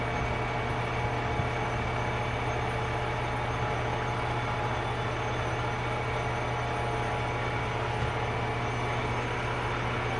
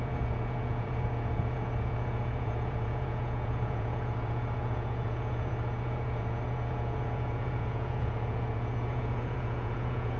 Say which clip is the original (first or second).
first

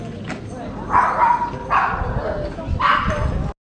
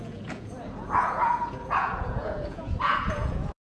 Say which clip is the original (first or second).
first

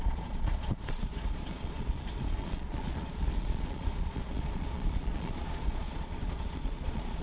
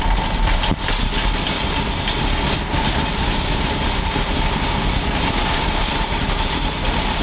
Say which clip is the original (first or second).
second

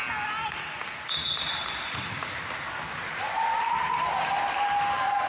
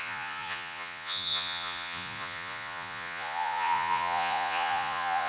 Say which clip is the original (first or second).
first